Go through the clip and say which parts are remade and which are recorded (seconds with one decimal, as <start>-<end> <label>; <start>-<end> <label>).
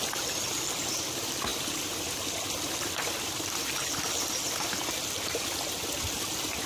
0.0-6.7 recorded